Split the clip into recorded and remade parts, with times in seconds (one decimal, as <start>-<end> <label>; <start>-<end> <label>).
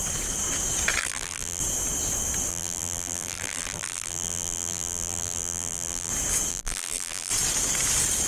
0.0-1.0 recorded; 1.0-1.6 remade; 1.6-2.5 recorded; 2.5-6.1 remade; 6.1-6.5 recorded; 6.5-7.3 remade; 7.3-8.3 recorded